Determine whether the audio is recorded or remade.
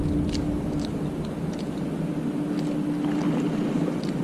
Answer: recorded